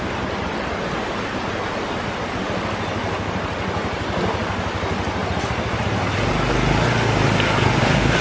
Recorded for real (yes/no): yes